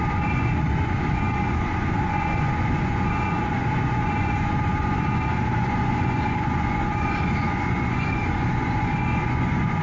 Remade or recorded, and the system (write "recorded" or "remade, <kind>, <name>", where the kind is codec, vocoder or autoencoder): remade, vocoder, Vocos